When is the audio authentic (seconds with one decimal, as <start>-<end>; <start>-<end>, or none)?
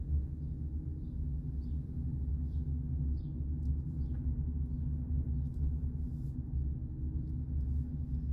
0.0-2.3; 3.2-8.3